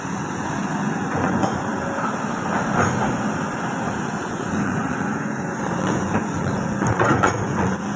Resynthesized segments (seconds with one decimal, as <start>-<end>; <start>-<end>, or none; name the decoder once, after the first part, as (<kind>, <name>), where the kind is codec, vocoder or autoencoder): 0.0-1.7 (vocoder, Vocos); 4.1-8.0